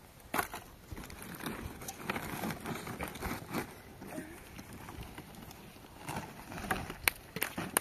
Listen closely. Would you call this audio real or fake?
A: real